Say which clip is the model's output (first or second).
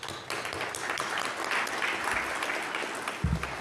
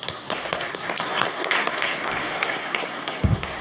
second